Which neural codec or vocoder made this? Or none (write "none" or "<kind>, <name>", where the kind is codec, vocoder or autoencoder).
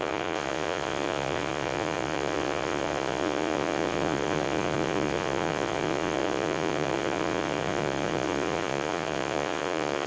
vocoder, Vocos